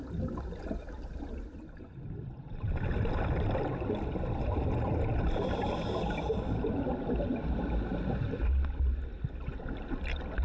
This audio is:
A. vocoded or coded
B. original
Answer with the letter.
B